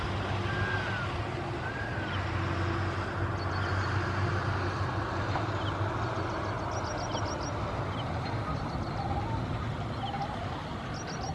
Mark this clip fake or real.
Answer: real